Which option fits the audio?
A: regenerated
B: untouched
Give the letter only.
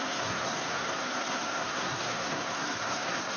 A